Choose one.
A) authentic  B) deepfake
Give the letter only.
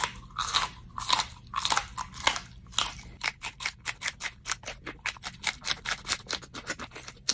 A